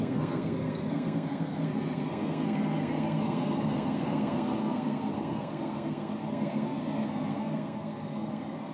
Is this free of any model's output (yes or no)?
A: no